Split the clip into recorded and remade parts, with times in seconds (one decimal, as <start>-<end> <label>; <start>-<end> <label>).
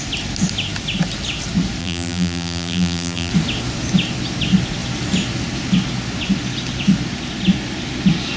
0.0-1.8 recorded; 1.8-3.3 remade; 3.3-8.4 recorded